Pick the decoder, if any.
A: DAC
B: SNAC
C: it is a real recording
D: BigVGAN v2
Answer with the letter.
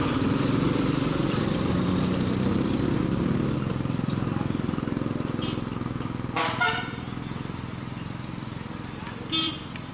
C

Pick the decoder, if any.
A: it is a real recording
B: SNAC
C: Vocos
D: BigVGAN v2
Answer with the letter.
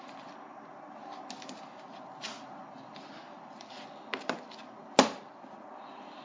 A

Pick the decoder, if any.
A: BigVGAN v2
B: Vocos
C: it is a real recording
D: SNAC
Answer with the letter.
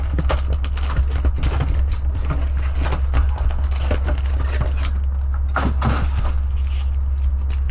C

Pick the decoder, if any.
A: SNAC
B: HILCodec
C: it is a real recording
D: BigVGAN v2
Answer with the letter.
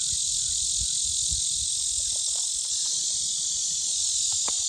C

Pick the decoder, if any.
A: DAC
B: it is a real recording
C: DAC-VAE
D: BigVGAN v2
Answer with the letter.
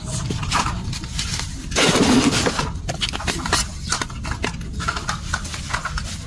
B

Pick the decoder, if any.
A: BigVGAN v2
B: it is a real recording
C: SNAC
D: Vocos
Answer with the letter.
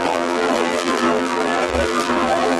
A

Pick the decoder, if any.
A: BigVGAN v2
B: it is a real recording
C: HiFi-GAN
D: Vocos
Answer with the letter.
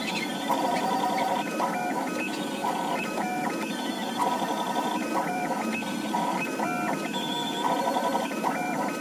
A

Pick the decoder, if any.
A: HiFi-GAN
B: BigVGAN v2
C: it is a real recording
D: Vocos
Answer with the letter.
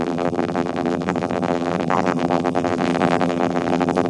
B